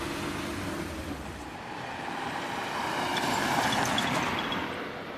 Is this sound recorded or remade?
recorded